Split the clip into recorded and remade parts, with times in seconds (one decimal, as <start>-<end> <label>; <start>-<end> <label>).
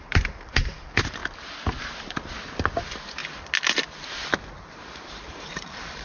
0.0-1.2 remade; 1.2-2.8 recorded; 2.8-3.2 remade; 3.2-4.8 recorded; 4.8-6.0 remade